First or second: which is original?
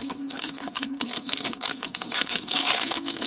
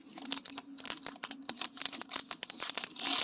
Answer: second